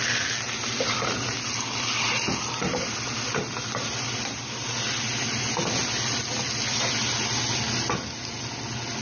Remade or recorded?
recorded